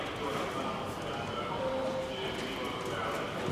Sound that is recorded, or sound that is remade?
recorded